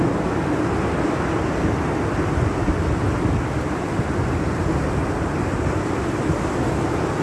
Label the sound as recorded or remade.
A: recorded